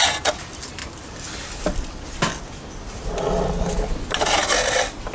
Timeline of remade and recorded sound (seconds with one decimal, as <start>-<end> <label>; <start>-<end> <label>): 0.0-5.1 recorded